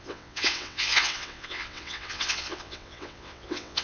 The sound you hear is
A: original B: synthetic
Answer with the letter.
B